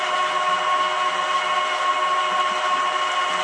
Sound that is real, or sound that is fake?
real